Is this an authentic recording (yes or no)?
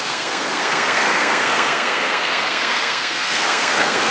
no